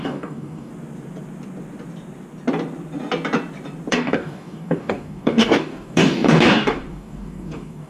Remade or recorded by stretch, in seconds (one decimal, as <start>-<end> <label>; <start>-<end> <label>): 0.0-0.7 remade; 0.7-3.9 recorded; 3.9-7.9 remade

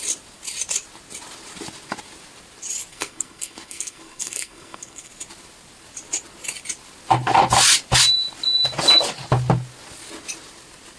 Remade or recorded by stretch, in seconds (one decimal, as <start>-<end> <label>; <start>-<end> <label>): 0.0-2.9 recorded; 2.9-5.1 remade; 5.1-11.0 recorded

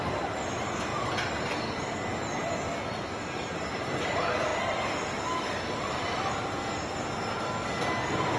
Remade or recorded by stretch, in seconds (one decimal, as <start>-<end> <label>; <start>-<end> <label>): 0.0-8.4 recorded

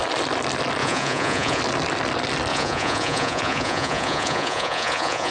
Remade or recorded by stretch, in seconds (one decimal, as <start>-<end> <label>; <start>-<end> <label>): 0.0-0.8 recorded; 0.8-1.6 remade; 1.6-2.5 recorded; 2.5-5.3 remade

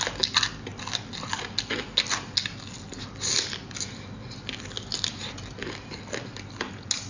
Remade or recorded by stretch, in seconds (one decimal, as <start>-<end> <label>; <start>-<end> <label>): 0.0-7.1 recorded

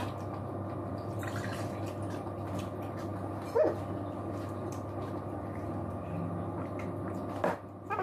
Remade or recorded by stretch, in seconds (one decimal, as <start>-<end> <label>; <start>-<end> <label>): 0.0-8.0 recorded

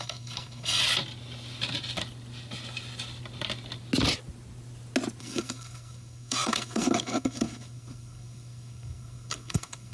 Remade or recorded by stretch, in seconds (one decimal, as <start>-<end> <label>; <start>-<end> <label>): 0.0-0.8 remade; 0.8-5.2 recorded; 5.2-9.9 remade